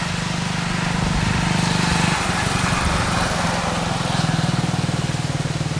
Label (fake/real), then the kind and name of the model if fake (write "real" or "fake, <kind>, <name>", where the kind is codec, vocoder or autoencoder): real